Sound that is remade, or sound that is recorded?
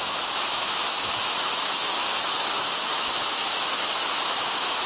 remade